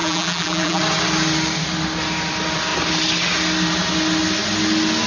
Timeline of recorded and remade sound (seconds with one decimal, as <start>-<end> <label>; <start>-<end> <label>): 0.0-0.8 remade; 0.8-5.1 recorded